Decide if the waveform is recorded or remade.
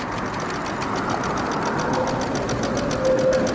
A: recorded